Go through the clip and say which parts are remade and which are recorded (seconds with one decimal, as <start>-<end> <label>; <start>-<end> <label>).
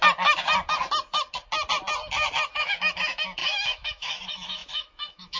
0.0-2.5 recorded; 2.5-5.4 remade